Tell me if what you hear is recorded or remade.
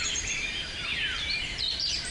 remade